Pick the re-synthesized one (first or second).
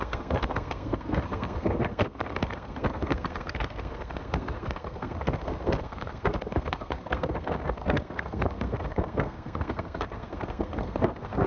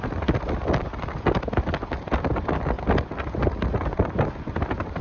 first